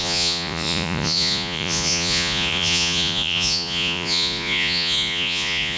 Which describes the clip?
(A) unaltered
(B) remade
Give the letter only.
B